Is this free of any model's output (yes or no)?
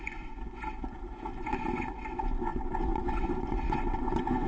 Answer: no